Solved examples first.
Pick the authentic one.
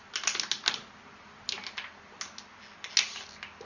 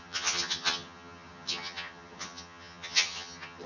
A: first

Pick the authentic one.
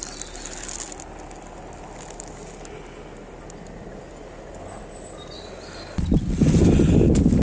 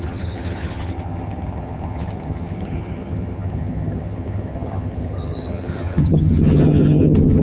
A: first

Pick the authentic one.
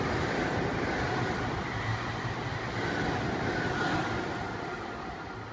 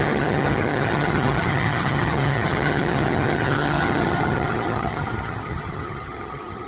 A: first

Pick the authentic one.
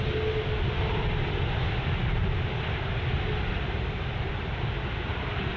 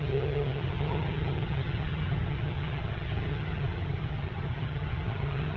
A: first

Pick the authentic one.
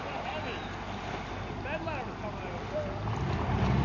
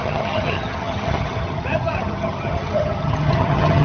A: first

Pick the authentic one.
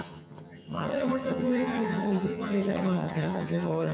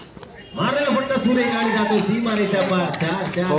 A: second